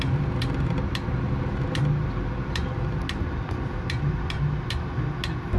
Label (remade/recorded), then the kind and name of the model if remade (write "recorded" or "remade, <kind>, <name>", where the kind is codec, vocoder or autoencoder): recorded